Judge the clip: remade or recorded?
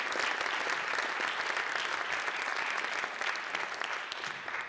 recorded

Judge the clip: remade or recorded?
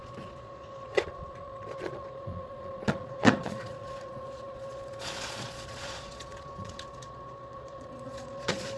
remade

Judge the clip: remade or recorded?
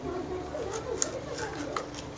recorded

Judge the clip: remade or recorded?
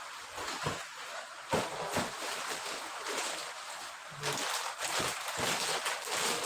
recorded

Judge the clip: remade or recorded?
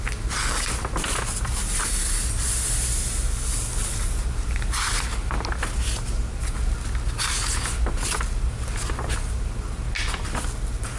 recorded